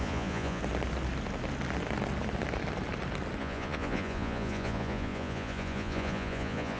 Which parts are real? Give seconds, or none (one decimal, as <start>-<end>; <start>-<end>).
0.6-3.4